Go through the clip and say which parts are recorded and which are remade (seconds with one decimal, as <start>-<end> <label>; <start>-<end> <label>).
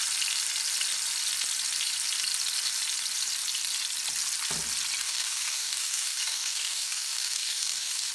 0.0-5.0 recorded; 5.0-8.1 remade